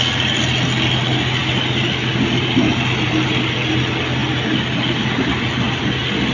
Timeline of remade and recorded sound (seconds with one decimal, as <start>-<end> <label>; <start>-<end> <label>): 0.0-6.3 recorded